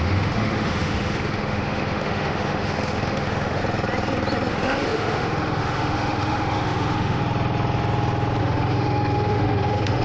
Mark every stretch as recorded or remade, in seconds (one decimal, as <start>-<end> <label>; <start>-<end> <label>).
0.0-3.6 remade; 3.6-4.5 recorded; 4.5-7.2 remade; 7.2-8.4 recorded; 8.4-10.0 remade